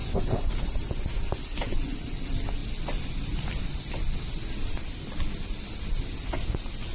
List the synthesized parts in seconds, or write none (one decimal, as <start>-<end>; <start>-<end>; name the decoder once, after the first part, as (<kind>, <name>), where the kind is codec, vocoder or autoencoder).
4.6-6.0 (vocoder, BigVGAN v2)